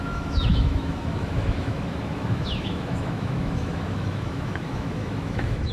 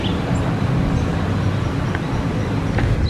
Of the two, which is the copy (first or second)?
first